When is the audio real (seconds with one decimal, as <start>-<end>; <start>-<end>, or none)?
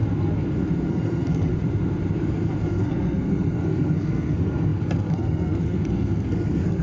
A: 0.0-0.9; 1.5-2.6